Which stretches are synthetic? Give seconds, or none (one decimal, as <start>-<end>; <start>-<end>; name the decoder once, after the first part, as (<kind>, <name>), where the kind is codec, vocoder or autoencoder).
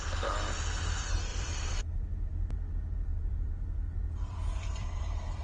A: 1.3-1.8 (vocoder, BigVGAN v2); 3.1-5.0